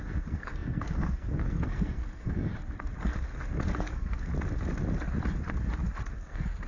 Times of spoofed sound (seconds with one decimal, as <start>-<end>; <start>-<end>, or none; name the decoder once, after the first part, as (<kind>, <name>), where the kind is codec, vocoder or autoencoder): 0.0-2.5 (codec, SNAC); 3.0-4.3; 6.1-6.7